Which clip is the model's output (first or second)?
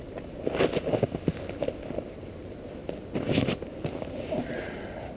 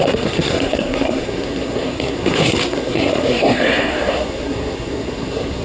second